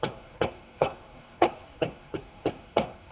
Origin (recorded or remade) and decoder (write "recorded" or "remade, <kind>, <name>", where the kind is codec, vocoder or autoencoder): remade, codec, SNAC